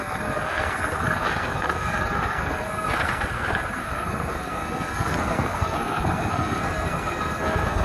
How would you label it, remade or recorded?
remade